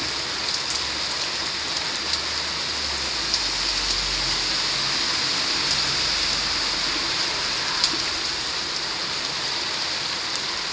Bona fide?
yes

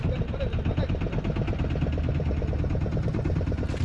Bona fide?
yes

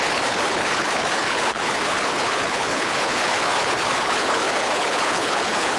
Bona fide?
no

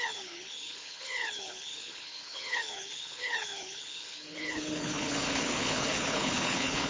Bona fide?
no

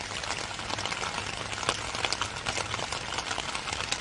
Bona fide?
yes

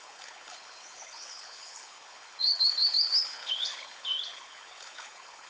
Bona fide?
no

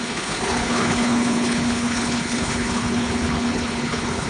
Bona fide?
no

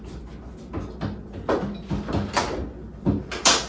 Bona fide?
yes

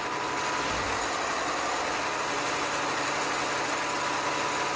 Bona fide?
yes